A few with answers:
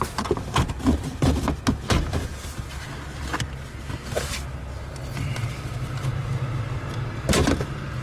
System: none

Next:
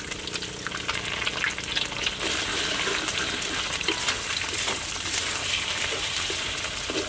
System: none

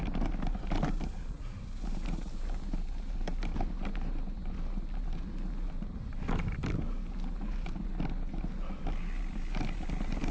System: none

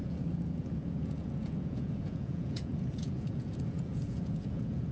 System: vocoder, Vocos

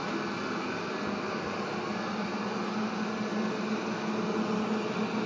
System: none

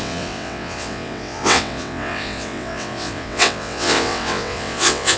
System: vocoder, WaveNeXt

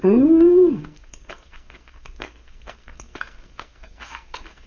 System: codec, SNAC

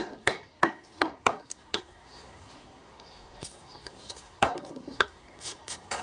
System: codec, SNAC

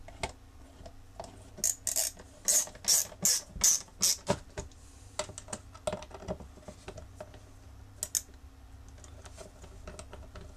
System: none